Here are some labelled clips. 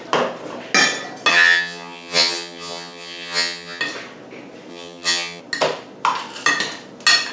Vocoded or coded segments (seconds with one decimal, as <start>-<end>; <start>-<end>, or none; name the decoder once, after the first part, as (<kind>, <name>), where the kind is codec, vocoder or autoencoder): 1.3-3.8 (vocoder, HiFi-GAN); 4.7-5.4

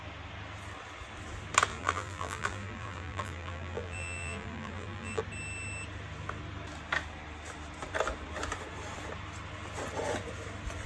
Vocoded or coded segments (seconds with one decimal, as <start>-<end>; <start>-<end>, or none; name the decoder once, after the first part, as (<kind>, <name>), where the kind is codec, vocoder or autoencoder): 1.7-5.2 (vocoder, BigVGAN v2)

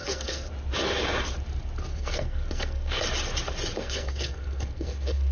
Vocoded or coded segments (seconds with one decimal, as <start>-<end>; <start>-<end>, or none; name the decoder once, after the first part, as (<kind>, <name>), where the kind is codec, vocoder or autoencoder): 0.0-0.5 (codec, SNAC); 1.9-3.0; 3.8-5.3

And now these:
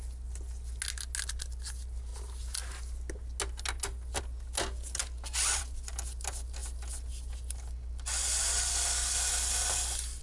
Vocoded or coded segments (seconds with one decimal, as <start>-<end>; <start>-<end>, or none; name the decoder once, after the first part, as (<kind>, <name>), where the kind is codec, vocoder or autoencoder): none

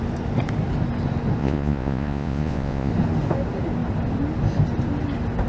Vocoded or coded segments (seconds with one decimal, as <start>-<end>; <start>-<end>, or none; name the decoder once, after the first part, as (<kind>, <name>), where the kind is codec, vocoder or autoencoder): 1.4-2.9 (vocoder, Vocos)

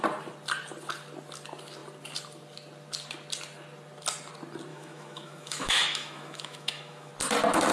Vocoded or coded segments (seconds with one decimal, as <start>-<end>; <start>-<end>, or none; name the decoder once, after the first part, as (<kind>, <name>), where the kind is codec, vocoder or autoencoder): 4.7-7.1 (autoencoder, DAC-VAE)

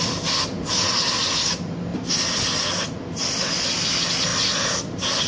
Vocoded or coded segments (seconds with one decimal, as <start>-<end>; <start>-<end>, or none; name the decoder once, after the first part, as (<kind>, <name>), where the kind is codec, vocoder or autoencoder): none